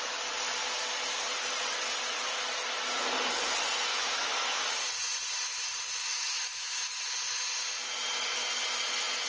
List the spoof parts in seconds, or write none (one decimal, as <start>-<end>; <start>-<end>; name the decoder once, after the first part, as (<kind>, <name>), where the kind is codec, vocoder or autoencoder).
3.9-4.6 (autoencoder, DAC-VAE); 6.0-7.1